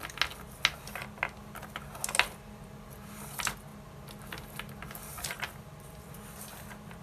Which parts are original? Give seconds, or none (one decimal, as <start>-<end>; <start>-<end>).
0.0-7.0